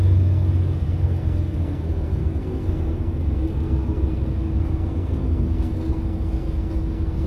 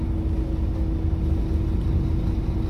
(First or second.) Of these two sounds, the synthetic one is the first